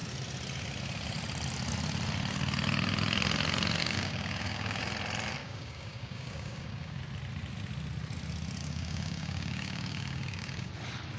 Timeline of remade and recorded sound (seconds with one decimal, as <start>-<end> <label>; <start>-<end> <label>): 0.0-3.8 recorded; 3.8-4.8 remade; 4.8-5.4 recorded; 5.4-7.0 remade; 7.0-8.6 recorded; 8.6-10.7 remade; 10.7-11.2 recorded

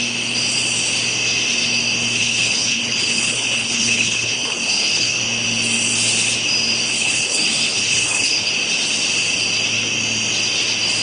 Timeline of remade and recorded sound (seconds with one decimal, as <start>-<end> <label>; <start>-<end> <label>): 0.0-2.2 recorded; 2.2-5.2 remade; 5.2-6.9 recorded; 6.9-8.5 remade; 8.5-11.0 recorded

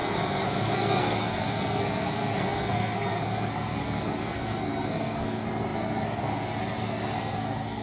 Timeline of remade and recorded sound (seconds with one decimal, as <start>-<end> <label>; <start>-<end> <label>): 0.0-7.8 remade

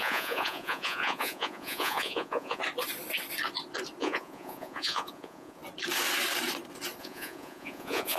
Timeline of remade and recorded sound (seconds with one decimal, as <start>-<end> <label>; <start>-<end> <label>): 0.0-2.6 remade; 2.6-4.0 recorded; 4.0-5.6 remade; 5.6-7.0 recorded; 7.0-8.2 remade

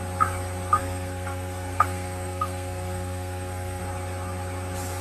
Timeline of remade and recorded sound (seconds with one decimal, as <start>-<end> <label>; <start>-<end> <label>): 0.0-0.8 recorded; 0.8-3.8 remade; 3.8-5.0 recorded

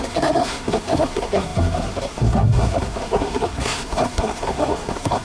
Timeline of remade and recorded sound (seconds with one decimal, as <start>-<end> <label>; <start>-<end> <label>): 0.0-5.2 remade

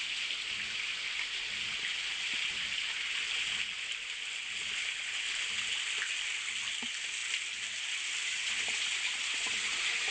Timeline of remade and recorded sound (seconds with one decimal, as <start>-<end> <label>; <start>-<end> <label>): 0.0-10.1 recorded

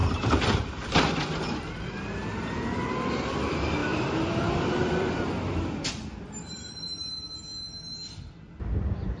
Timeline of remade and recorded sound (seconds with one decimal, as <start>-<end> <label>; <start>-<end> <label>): 0.0-0.9 remade; 0.9-3.8 recorded; 3.8-5.9 remade; 5.9-7.5 recorded; 7.5-8.2 remade; 8.2-9.2 recorded